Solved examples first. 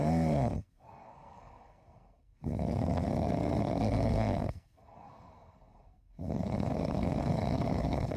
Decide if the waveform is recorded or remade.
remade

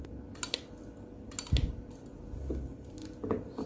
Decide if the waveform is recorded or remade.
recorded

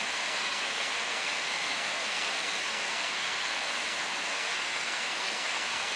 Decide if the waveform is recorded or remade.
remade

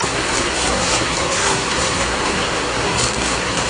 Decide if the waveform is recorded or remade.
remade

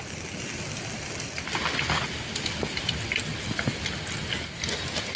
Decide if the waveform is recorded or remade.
recorded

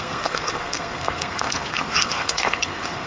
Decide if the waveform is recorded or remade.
remade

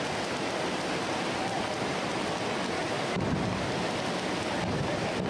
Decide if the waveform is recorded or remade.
recorded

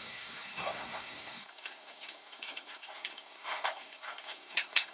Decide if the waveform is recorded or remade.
remade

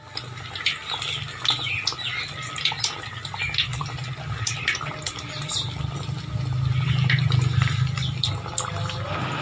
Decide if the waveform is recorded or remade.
recorded